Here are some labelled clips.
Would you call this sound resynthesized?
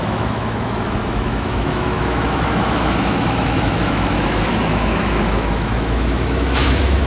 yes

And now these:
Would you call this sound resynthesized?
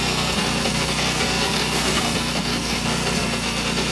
yes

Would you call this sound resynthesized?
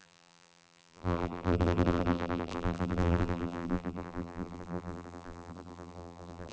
yes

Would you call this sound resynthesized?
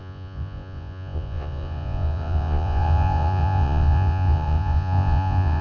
yes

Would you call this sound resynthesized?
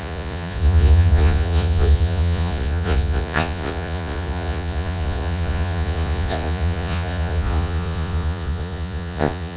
yes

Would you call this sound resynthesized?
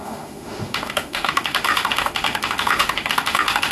yes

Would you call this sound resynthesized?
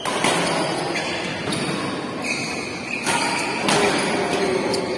no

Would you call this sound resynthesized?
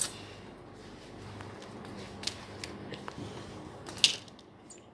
no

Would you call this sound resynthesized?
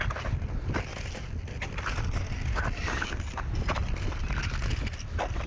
no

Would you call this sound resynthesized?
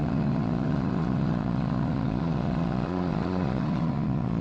yes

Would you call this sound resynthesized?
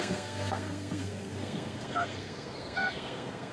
yes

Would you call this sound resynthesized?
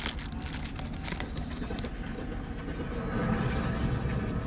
no